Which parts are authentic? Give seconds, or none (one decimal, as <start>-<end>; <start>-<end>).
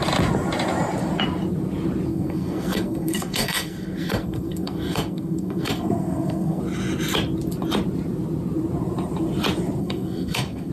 0.0-2.1; 6.6-9.8